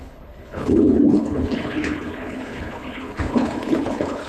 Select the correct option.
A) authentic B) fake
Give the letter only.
B